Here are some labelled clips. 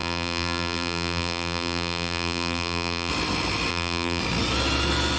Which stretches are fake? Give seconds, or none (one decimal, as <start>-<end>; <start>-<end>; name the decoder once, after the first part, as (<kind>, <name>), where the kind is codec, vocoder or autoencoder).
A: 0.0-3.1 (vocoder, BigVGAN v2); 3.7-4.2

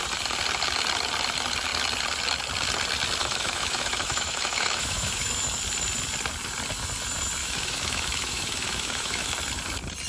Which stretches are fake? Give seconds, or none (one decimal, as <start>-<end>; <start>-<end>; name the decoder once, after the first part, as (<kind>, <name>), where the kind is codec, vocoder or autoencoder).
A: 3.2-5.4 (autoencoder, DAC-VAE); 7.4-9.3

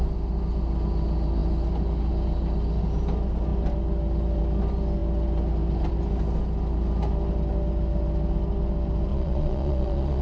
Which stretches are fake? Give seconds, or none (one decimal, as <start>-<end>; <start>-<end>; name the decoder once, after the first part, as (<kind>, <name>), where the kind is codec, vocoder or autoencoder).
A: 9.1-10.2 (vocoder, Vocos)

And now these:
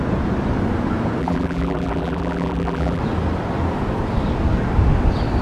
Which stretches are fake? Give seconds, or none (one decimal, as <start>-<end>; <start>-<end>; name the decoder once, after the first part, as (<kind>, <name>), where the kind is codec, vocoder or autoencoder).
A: 1.2-3.0 (vocoder, BigVGAN v2)

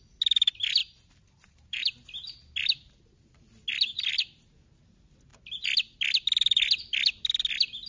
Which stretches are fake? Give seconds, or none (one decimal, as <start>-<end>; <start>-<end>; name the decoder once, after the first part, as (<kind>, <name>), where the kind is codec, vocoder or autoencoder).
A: 0.8-1.9 (vocoder, BigVGAN v2)